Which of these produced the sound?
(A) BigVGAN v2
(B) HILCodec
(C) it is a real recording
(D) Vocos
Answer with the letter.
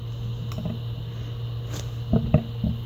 C